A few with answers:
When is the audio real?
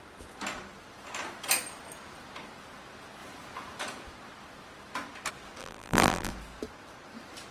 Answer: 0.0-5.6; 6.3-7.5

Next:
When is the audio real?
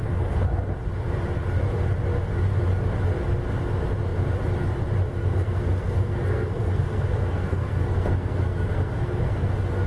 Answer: 0.0-5.2; 9.5-9.9